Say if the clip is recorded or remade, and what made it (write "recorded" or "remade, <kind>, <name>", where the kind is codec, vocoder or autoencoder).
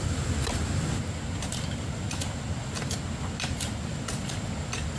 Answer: recorded